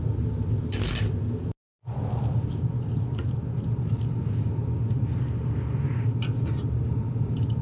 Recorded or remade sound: recorded